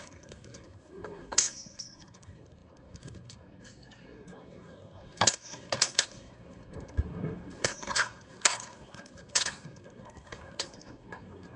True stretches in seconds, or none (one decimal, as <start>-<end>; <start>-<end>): none